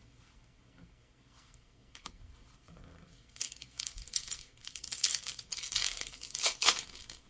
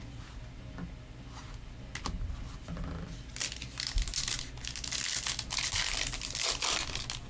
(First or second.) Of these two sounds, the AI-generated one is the first